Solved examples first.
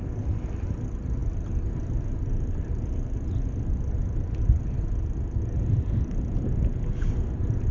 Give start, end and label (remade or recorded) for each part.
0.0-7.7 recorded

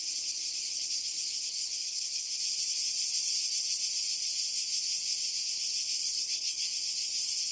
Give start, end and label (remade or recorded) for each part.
0.0-6.0 recorded; 6.0-6.7 remade; 6.7-7.5 recorded

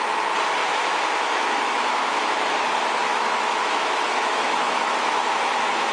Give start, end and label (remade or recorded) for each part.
0.0-0.6 recorded; 0.6-2.2 remade; 2.2-3.1 recorded; 3.1-5.9 remade